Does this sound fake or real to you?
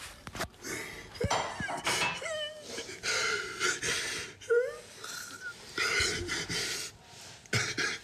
real